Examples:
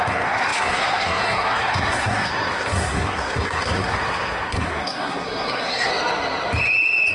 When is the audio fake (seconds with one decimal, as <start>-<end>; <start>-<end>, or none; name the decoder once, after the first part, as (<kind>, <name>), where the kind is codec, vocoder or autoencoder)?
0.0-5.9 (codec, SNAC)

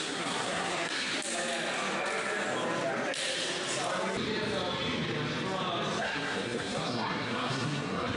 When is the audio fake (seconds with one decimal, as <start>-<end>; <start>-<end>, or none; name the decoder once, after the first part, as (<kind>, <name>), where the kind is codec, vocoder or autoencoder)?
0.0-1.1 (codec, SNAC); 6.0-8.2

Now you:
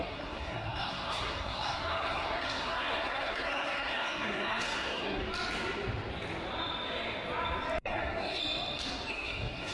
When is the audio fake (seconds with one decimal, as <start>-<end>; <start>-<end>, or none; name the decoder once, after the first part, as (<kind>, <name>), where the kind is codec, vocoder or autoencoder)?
0.0-5.2 (codec, SNAC); 7.8-8.4; 9.1-9.7

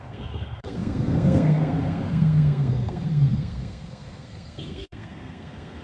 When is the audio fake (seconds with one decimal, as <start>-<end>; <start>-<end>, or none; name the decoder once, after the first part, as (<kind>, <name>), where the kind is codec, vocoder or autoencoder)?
0.0-5.8 (codec, SNAC)

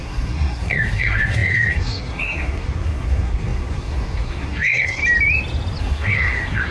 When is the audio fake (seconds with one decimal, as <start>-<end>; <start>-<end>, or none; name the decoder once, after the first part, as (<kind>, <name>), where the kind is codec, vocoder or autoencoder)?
0.0-5.0 (codec, SNAC); 5.8-6.7

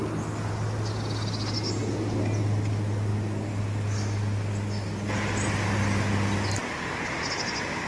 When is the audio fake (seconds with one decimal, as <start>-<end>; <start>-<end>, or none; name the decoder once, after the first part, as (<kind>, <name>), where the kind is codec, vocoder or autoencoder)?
none

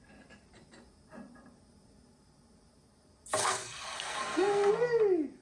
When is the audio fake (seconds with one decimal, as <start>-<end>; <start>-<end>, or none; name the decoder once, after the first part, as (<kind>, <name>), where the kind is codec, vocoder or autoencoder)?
3.4-4.7 (codec, SNAC)

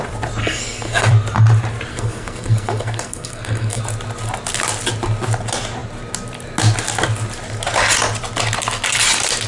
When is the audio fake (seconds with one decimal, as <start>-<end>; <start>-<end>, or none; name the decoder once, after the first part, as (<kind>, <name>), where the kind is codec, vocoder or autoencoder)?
0.4-1.1 (codec, SNAC); 1.9-3.8